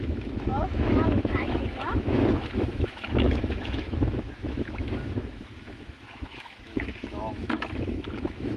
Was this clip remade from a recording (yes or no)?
yes